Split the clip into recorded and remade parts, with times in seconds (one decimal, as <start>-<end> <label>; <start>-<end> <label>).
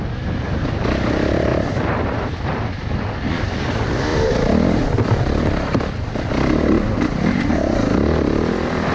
0.0-1.5 recorded; 1.5-2.5 remade; 2.5-4.1 recorded; 4.1-5.2 remade; 5.2-8.9 recorded